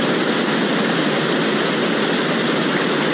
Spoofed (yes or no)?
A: no